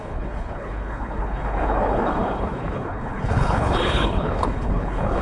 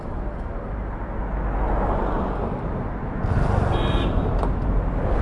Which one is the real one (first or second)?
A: second